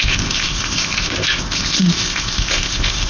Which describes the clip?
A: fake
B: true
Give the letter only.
A